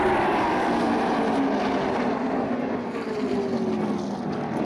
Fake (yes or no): no